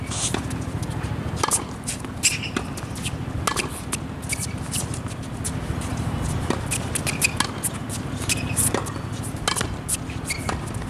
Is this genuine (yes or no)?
yes